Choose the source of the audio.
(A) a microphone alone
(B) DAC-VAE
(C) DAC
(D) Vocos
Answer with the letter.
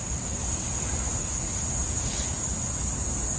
A